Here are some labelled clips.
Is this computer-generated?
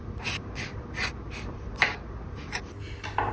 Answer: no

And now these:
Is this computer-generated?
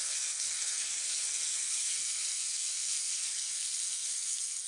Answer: yes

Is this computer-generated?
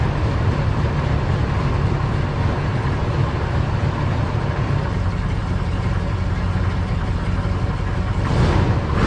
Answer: no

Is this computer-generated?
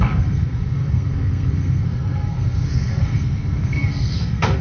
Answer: yes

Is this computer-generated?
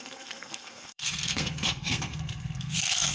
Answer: yes